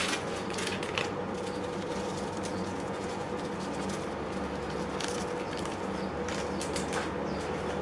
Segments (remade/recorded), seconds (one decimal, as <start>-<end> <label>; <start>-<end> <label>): 0.0-1.1 remade; 1.1-2.5 recorded; 2.5-3.3 remade; 3.3-7.8 recorded